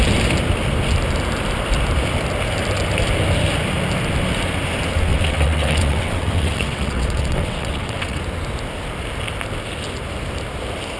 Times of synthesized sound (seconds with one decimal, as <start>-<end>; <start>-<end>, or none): 5.1-8.2